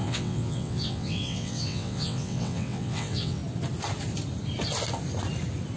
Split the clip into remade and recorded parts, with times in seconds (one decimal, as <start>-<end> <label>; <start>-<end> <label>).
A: 0.0-3.4 remade; 3.4-5.8 recorded